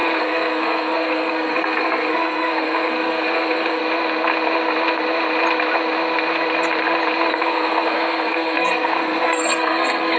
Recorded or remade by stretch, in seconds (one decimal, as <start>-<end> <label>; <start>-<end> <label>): 0.0-3.8 remade; 3.8-7.3 recorded; 7.3-10.2 remade